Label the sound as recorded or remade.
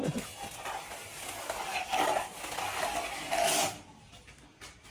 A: recorded